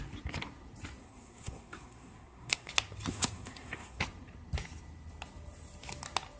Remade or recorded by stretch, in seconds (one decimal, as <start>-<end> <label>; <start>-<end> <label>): 0.0-1.0 recorded; 1.0-2.7 remade; 2.7-3.1 recorded; 3.1-4.0 remade; 4.0-6.4 recorded